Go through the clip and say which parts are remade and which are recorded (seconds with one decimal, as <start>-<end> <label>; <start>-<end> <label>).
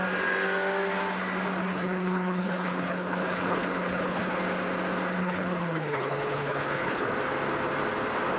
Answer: 0.0-1.6 recorded; 1.6-4.4 remade; 4.4-5.2 recorded; 5.2-7.1 remade; 7.1-8.4 recorded